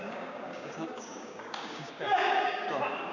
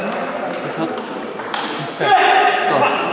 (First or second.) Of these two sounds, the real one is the second